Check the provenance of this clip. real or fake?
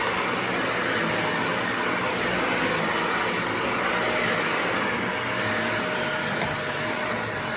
real